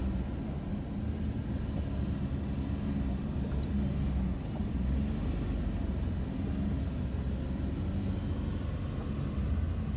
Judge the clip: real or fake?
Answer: real